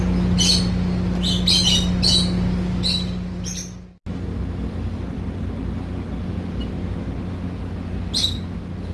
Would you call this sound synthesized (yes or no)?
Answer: no